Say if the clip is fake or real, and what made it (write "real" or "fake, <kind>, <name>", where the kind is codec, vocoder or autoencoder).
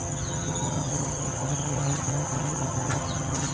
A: fake, vocoder, HiFi-GAN